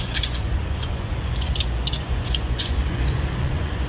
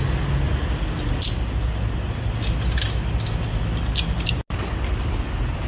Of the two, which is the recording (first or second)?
second